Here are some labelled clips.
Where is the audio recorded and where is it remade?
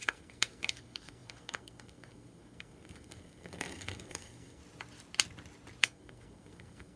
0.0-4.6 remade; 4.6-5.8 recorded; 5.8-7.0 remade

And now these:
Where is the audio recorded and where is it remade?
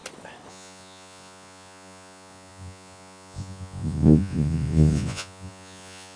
0.0-0.5 recorded; 0.5-6.2 remade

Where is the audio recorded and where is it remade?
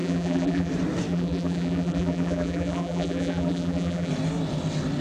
0.0-0.7 remade; 0.7-1.1 recorded; 1.1-4.1 remade; 4.1-5.0 recorded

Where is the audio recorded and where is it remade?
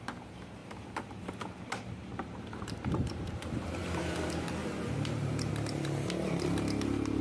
0.0-2.1 recorded; 2.1-3.8 remade; 3.8-4.6 recorded; 4.6-5.5 remade; 5.5-7.2 recorded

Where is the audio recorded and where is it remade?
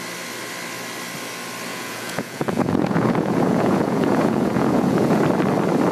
0.0-1.7 recorded; 1.7-5.2 remade; 5.2-5.9 recorded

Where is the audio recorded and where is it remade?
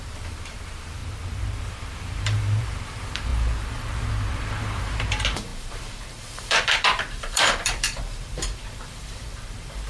0.0-1.0 remade; 1.0-1.7 recorded; 1.7-9.9 remade